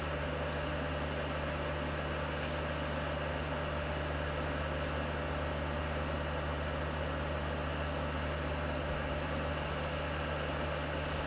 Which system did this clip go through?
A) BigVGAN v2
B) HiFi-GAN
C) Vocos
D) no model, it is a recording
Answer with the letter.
D